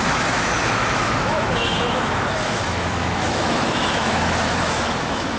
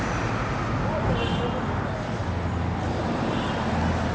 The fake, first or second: first